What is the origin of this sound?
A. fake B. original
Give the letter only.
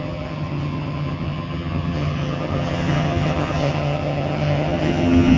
A